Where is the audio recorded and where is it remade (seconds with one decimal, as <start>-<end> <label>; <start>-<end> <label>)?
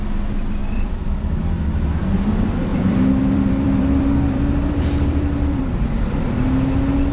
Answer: 0.0-0.6 recorded; 0.6-1.4 remade; 1.4-2.7 recorded; 2.7-6.4 remade; 6.4-7.1 recorded